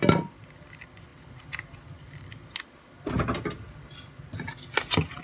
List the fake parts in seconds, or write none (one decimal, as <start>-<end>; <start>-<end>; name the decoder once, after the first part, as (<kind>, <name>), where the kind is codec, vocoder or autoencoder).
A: none

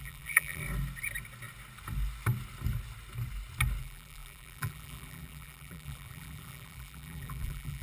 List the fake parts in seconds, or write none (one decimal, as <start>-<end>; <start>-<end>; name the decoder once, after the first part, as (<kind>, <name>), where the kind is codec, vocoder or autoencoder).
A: 0.0-0.6 (vocoder, BigVGAN v2); 3.8-7.8